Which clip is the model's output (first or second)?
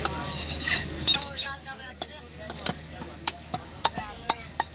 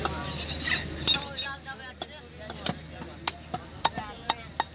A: first